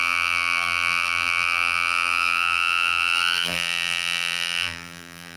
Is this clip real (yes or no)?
no